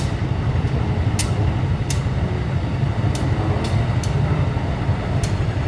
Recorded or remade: recorded